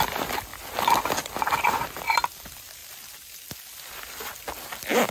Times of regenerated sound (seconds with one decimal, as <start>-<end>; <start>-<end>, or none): none